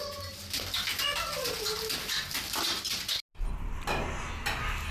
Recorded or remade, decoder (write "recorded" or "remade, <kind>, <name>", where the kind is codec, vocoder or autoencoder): recorded